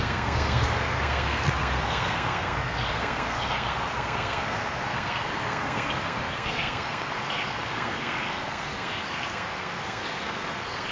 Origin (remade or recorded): remade